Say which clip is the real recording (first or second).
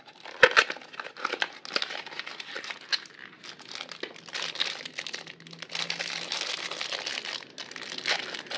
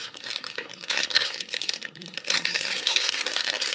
first